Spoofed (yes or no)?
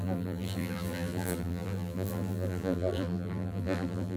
yes